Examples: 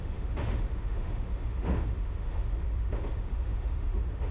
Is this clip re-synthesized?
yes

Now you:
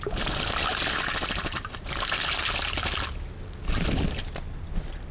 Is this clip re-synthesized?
no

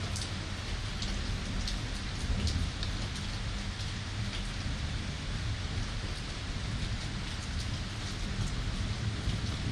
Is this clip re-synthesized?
no